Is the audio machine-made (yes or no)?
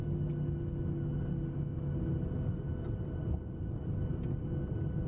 no